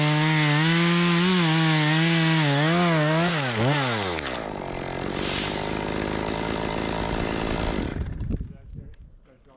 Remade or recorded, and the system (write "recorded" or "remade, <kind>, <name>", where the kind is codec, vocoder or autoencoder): recorded